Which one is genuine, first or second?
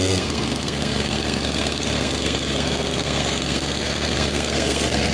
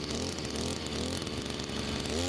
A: second